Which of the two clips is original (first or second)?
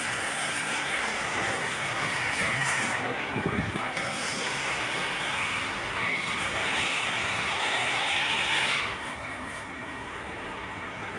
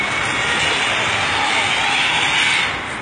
second